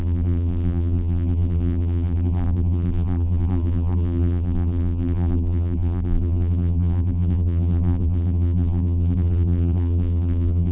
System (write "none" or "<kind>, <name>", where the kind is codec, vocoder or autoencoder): vocoder, BigVGAN v2